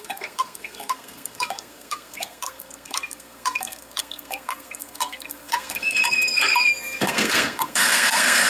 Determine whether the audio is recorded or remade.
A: remade